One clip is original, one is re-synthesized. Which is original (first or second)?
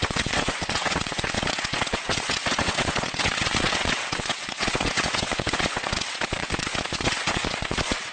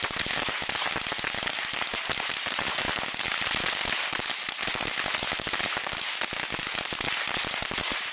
second